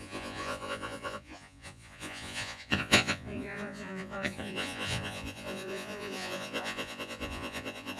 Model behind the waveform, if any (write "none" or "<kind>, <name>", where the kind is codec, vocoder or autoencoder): vocoder, Vocos